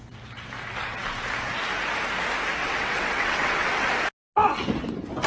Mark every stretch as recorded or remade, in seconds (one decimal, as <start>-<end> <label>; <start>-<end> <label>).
0.0-2.6 recorded; 2.6-3.9 remade; 3.9-5.3 recorded